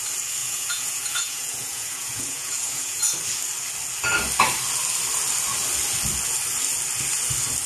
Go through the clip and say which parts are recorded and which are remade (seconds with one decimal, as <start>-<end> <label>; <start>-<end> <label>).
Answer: 0.0-0.4 recorded; 0.4-3.0 remade; 3.0-7.7 recorded